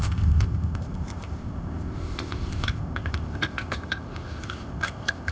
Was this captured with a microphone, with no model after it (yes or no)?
no